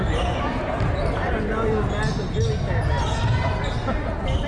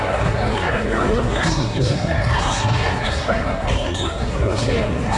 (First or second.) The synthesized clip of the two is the second